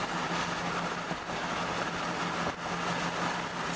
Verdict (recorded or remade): recorded